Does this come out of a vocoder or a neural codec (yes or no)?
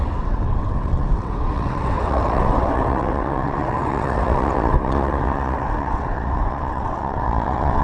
yes